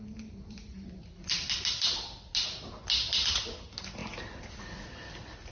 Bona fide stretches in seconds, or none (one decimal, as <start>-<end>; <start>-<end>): 0.0-5.5